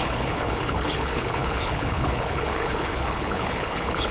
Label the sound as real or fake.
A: fake